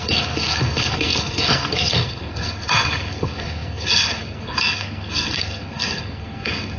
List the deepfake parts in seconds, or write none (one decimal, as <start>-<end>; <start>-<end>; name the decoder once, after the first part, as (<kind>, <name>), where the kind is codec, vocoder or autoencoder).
0.0-6.8 (codec, SNAC)